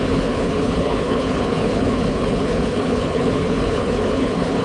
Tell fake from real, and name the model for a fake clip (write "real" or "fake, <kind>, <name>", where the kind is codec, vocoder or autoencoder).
fake, codec, HILCodec